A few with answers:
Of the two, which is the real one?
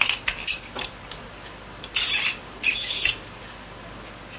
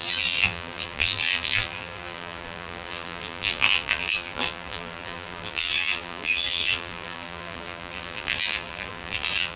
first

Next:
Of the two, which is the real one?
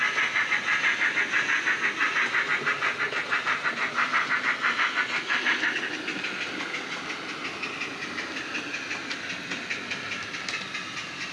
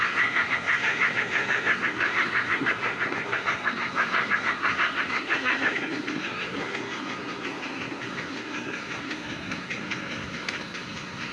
first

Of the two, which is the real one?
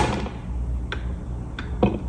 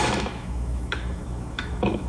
first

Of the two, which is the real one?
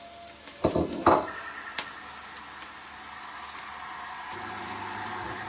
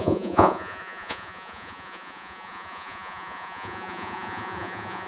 first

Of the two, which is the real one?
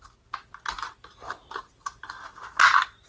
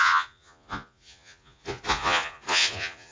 first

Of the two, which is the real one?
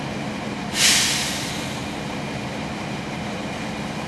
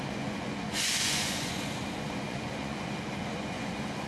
first